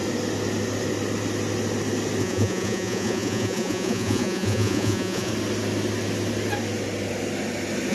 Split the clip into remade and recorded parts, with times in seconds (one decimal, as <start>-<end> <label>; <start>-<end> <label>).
0.0-2.2 recorded; 2.2-5.3 remade; 5.3-7.9 recorded